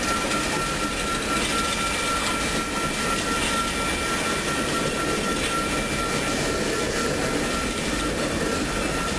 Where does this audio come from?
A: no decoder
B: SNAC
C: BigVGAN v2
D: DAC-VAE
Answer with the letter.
A